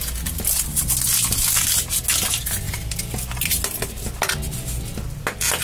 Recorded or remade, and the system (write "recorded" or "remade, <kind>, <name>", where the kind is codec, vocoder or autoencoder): recorded